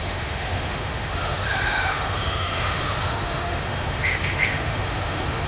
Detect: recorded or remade remade